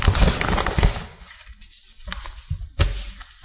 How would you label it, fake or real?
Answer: real